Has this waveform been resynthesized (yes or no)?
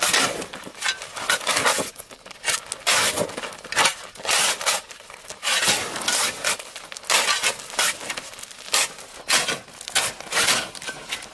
no